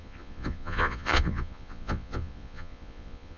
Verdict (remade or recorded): remade